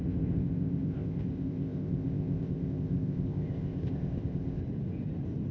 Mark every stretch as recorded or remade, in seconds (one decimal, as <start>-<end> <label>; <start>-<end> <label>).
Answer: 0.0-4.6 remade; 4.6-5.5 recorded